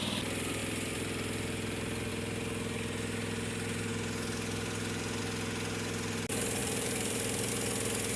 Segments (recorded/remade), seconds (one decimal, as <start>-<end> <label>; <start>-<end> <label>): 0.0-0.6 recorded; 0.6-2.1 remade; 2.1-6.6 recorded; 6.6-7.5 remade; 7.5-8.2 recorded